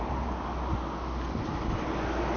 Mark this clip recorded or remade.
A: recorded